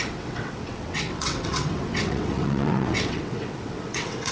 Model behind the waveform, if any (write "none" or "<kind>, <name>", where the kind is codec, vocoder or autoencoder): vocoder, WaveNeXt